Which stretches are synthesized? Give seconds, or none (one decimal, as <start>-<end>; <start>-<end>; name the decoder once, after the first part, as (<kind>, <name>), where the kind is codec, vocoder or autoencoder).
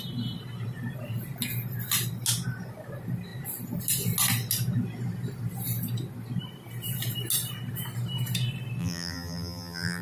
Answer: 8.8-10.0 (vocoder, BigVGAN v2)